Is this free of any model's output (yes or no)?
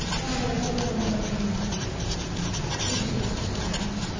yes